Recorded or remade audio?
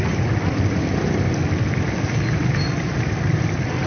remade